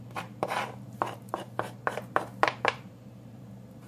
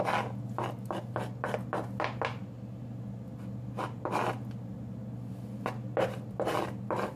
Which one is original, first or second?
second